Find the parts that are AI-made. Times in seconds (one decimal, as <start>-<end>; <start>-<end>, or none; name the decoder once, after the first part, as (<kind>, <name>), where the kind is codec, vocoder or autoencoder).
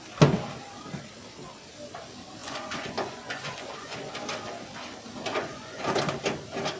2.4-4.1 (vocoder, Vocos); 5.3-6.0